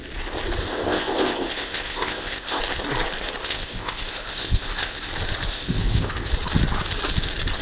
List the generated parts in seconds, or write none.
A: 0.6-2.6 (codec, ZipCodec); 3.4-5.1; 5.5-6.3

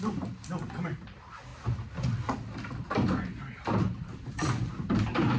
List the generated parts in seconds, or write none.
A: none

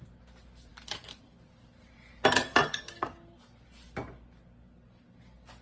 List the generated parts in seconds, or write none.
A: none

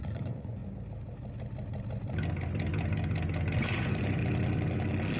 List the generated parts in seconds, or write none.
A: 0.0-0.6 (vocoder, Vocos); 3.7-4.2

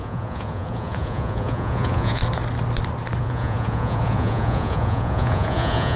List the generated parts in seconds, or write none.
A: 0.0-2.2 (vocoder, Vocos); 3.2-6.0

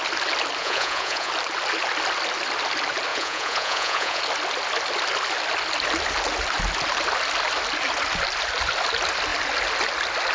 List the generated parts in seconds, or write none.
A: 0.6-1.3 (vocoder, Vocos); 3.1-4.2

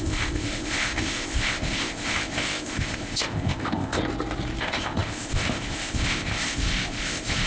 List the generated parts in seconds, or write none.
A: 0.0-4.0 (codec, ZipCodec); 4.6-7.5

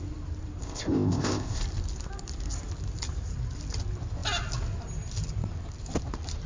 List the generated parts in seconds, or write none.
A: 0.6-1.6 (codec, ZipCodec)